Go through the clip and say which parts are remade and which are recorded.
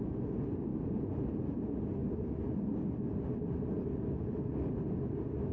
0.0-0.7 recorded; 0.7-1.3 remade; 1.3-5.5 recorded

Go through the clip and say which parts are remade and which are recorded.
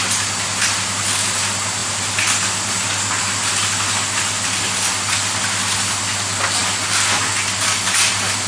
0.0-8.5 recorded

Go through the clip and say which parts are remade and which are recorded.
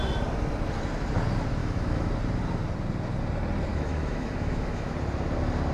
0.0-1.6 recorded; 1.6-2.1 remade; 2.1-3.7 recorded; 3.7-4.9 remade; 4.9-5.7 recorded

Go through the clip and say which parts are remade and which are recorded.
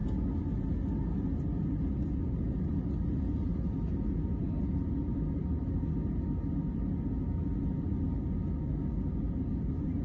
0.0-10.0 recorded